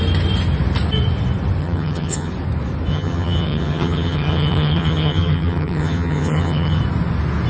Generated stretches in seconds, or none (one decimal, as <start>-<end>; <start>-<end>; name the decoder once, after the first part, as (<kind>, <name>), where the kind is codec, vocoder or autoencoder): 1.6-2.3 (vocoder, HiFi-GAN); 2.9-6.8